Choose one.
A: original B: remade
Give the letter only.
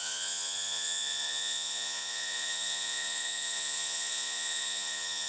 B